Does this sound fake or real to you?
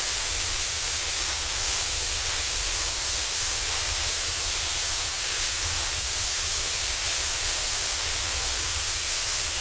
fake